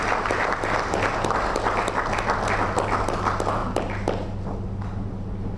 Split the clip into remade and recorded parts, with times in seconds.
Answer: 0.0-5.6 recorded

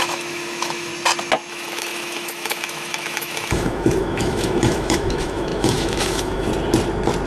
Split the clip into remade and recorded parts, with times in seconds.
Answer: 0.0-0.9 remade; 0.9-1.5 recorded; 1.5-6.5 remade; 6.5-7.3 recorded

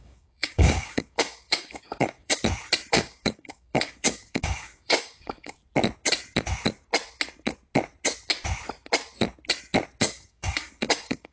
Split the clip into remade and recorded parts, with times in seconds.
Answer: 0.0-2.4 remade; 2.4-2.9 recorded; 2.9-5.6 remade; 5.6-10.0 recorded; 10.0-11.3 remade

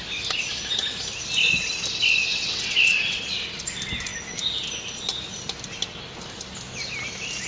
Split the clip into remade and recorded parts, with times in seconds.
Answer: 0.0-2.3 recorded; 2.3-3.2 remade; 3.2-7.5 recorded

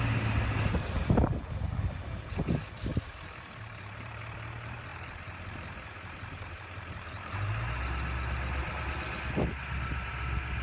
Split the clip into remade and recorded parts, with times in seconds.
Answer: 0.0-2.9 recorded; 2.9-4.2 remade; 4.2-4.9 recorded; 4.9-7.4 remade; 7.4-10.6 recorded

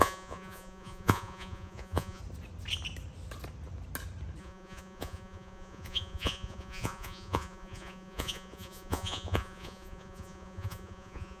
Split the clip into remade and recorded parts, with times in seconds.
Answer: 0.0-2.2 remade; 2.2-4.4 recorded; 4.4-11.4 remade

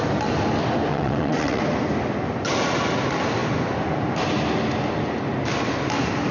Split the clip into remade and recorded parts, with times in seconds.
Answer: 0.0-0.9 recorded; 0.9-1.6 remade; 1.6-6.3 recorded

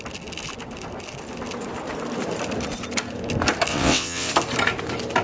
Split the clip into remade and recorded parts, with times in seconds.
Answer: 0.0-3.7 recorded; 3.7-4.3 remade; 4.3-5.2 recorded